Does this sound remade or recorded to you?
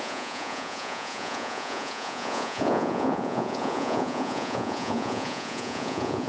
remade